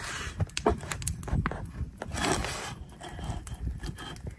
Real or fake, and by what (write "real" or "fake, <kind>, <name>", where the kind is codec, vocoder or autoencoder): real